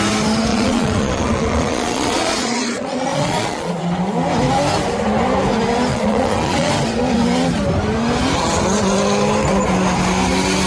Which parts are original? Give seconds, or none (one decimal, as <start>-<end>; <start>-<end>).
0.0-0.5; 3.8-5.9; 6.7-10.7